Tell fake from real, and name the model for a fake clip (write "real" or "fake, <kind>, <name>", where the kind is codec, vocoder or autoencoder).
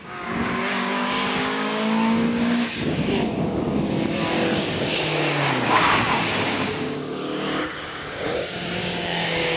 fake, codec, DAC